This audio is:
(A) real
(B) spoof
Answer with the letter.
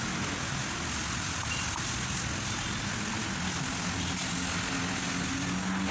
A